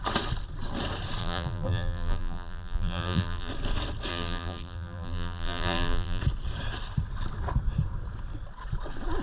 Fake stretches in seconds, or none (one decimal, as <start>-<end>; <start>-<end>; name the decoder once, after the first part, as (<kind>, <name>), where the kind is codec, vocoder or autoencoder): 1.2-3.5 (vocoder, BigVGAN v2); 4.1-6.2